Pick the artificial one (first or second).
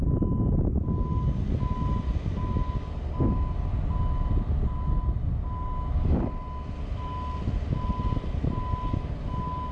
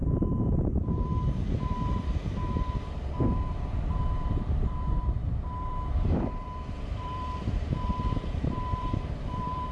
second